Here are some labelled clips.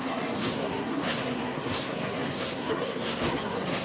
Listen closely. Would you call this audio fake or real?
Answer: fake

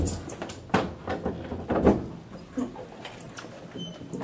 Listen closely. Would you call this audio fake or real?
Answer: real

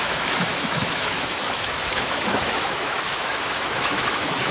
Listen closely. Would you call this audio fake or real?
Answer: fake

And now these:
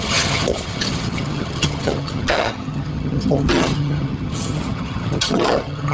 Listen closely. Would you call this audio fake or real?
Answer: fake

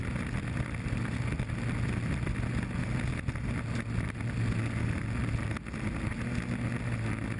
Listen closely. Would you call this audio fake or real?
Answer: real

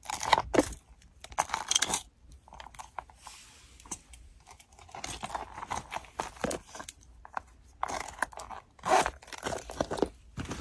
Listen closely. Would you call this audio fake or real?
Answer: real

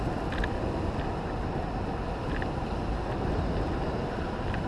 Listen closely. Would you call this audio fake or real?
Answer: real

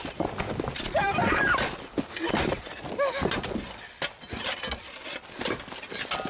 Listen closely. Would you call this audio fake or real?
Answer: real